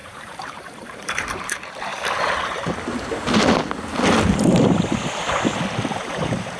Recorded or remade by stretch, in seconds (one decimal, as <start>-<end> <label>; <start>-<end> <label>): 0.0-1.9 remade; 1.9-5.9 recorded; 5.9-6.6 remade